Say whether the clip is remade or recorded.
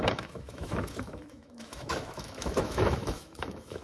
remade